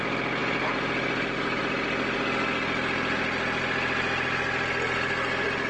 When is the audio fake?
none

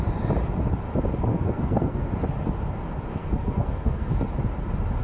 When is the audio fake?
1.3-2.1 (codec, SNAC); 3.1-4.1

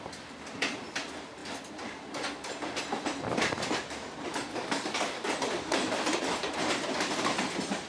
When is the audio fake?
4.5-5.3 (codec, DAC)

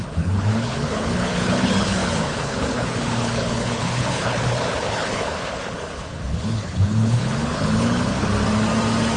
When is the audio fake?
0.0-8.3 (codec, HILCodec)

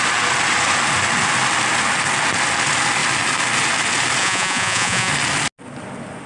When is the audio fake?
4.2-5.1 (vocoder, Vocos)